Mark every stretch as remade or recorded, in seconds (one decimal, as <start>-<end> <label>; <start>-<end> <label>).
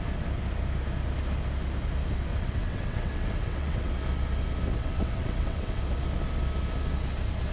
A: 0.0-2.3 recorded; 2.3-3.9 remade; 3.9-4.7 recorded; 4.7-5.8 remade; 5.8-7.5 recorded